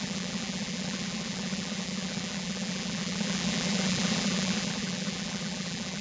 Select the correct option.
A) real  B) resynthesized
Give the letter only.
B